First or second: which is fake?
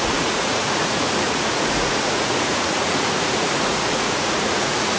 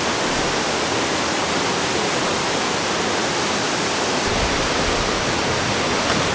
first